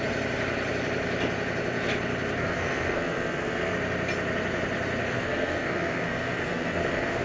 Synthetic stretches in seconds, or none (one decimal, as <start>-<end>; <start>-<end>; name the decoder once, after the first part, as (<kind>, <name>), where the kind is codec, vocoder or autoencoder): 2.4-3.7 (codec, SNAC); 5.1-7.2